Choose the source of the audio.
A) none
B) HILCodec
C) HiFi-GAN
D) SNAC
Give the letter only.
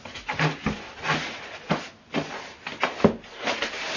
A